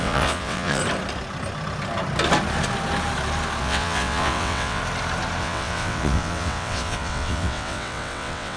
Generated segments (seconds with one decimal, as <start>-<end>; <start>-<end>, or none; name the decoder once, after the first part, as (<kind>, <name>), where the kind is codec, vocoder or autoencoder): 0.0-0.8 (vocoder, WaveNeXt); 3.6-4.8; 5.4-8.6